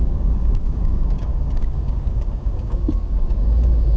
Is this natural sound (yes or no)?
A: no